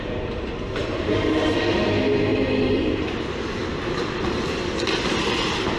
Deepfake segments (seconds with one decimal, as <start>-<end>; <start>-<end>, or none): 0.8-1.5; 2.3-3.3